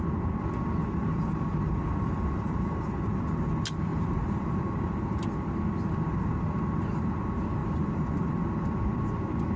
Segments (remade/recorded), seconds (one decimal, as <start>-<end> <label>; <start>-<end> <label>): 0.0-0.8 recorded; 0.8-3.1 remade; 3.1-3.9 recorded; 3.9-4.6 remade; 4.6-7.6 recorded; 7.6-8.5 remade; 8.5-9.6 recorded